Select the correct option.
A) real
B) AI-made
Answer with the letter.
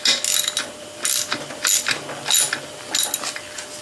A